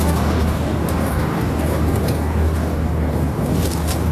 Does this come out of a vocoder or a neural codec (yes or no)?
yes